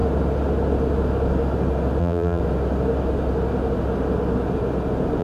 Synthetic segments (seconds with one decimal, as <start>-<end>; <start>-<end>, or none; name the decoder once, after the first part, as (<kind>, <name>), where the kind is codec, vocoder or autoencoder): 2.0-2.4 (vocoder, BigVGAN v2)